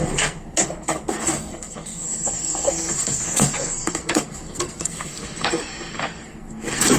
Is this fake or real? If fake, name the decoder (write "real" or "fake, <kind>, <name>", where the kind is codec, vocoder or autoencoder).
fake, codec, SNAC